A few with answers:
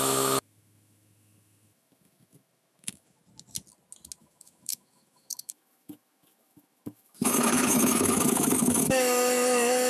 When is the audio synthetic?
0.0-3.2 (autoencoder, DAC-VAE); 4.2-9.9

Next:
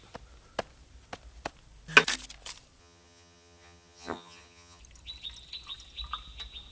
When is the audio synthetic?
2.8-4.8 (vocoder, HiFi-GAN)

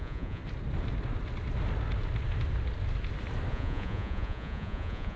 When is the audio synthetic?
0.0-0.4 (vocoder, Vocos); 3.5-5.2